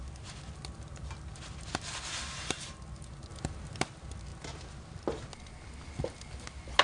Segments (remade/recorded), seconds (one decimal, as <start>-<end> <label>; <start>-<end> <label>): 0.0-6.8 recorded